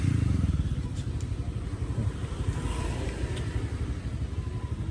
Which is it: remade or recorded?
recorded